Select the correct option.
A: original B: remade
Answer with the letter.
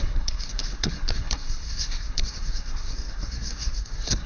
B